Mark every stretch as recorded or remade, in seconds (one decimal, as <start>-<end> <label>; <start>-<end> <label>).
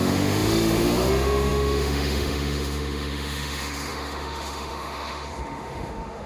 0.0-6.3 remade